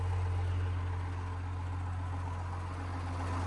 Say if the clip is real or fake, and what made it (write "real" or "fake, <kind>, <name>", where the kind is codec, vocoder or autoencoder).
real